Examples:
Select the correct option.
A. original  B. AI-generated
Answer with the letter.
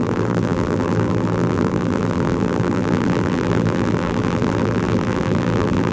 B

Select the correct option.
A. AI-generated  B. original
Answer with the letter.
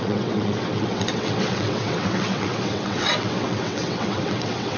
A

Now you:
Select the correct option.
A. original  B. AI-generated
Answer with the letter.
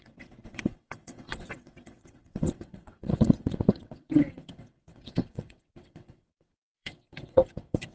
B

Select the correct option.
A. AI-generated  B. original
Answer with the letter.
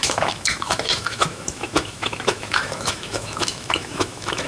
A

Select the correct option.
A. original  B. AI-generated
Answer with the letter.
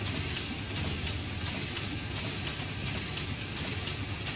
A